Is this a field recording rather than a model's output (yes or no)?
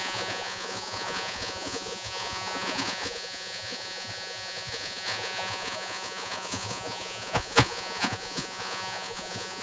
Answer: no